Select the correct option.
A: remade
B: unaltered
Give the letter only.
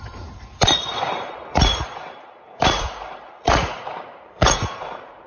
A